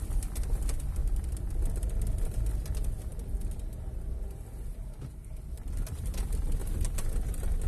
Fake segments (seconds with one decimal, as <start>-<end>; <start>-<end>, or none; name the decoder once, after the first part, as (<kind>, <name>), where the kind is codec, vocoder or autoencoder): 0.0-6.6 (vocoder, BigVGAN v2)